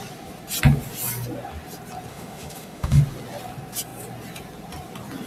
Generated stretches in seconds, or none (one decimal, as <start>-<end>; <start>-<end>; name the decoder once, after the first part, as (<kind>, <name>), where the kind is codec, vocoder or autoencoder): 2.1-3.0 (autoencoder, DAC-VAE)